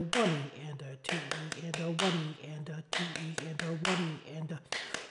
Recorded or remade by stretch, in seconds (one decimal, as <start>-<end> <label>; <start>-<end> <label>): 0.0-5.1 recorded